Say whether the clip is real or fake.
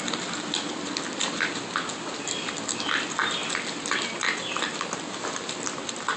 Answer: real